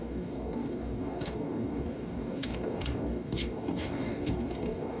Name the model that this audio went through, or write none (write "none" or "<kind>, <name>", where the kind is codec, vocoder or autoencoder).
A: codec, DAC